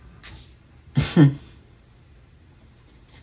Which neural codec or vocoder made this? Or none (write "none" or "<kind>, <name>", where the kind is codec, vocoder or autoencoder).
none